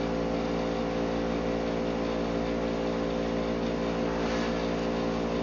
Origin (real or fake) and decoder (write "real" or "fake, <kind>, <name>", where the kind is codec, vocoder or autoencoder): real